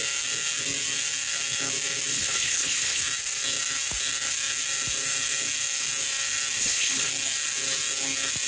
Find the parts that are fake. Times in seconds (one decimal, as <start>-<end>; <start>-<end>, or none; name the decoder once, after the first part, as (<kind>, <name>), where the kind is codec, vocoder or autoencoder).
2.1-3.0 (codec, HILCodec); 6.6-7.1